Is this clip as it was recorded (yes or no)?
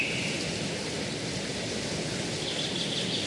yes